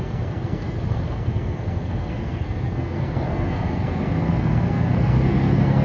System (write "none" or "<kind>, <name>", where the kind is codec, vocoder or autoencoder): codec, SNAC